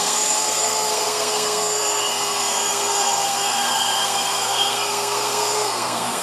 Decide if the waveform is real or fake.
fake